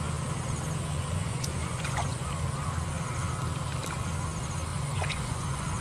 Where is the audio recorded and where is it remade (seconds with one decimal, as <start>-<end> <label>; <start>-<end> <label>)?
0.0-0.9 recorded; 0.9-2.3 remade; 2.3-4.7 recorded; 4.7-5.8 remade

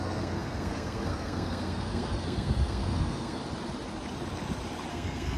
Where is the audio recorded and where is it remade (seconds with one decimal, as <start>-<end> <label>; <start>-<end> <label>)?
0.0-3.4 remade; 3.4-4.9 recorded; 4.9-5.4 remade

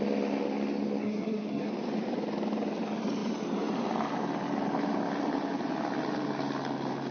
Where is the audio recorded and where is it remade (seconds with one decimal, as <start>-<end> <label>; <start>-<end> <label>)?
0.0-1.0 recorded; 1.0-1.7 remade; 1.7-7.1 recorded

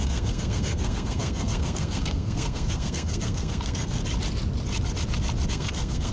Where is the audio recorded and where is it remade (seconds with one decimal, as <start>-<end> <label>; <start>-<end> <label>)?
0.0-4.0 remade; 4.0-5.5 recorded; 5.5-6.1 remade

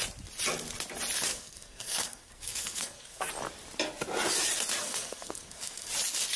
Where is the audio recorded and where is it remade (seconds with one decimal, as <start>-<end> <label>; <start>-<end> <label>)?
0.0-1.3 recorded; 1.3-3.3 remade; 3.3-4.8 recorded; 4.8-5.9 remade; 5.9-6.4 recorded

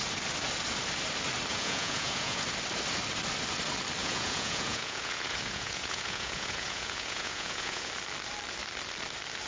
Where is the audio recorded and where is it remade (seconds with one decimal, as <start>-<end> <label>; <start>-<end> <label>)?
0.0-1.5 recorded; 1.5-2.4 remade; 2.4-4.0 recorded; 4.0-7.9 remade; 7.9-9.5 recorded